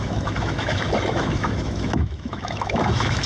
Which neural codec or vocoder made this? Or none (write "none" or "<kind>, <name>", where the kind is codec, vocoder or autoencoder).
autoencoder, DAC-VAE